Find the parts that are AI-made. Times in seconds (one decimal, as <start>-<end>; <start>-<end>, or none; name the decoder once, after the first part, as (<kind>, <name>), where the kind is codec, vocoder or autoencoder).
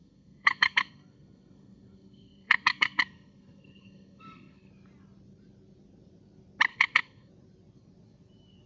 0.0-4.7 (codec, SNAC); 6.7-7.3